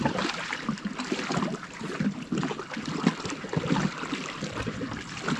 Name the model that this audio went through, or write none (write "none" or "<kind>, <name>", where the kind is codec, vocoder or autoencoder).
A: none